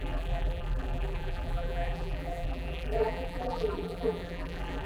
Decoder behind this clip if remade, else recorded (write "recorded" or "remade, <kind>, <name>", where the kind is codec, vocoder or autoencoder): remade, vocoder, BigVGAN v2